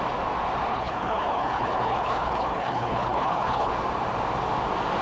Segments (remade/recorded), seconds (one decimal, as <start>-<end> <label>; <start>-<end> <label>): 0.0-0.7 recorded; 0.7-3.7 remade; 3.7-5.0 recorded